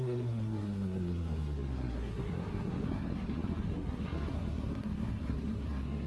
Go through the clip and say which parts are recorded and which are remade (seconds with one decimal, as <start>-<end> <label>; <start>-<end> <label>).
0.0-6.1 remade